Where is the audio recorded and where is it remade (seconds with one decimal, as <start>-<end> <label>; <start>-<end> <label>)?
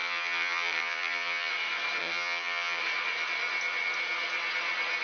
0.0-1.5 remade; 1.5-2.0 recorded; 2.0-2.8 remade; 2.8-5.0 recorded